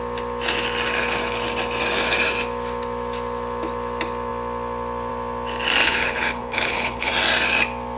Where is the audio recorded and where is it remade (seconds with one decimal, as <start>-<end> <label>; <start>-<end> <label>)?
0.0-5.8 recorded; 5.8-7.1 remade; 7.1-8.0 recorded